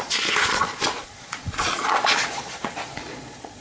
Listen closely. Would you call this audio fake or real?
fake